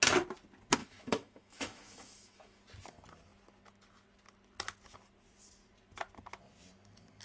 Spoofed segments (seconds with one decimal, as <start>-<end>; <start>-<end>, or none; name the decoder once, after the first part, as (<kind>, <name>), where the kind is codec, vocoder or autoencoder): 0.8-2.6 (autoencoder, DAC-VAE)